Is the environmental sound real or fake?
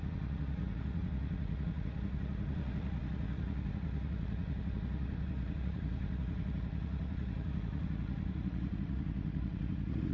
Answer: fake